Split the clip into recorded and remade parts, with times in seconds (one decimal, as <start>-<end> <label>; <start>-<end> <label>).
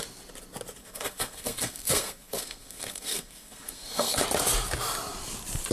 0.0-0.8 recorded; 0.8-4.2 remade; 4.2-5.7 recorded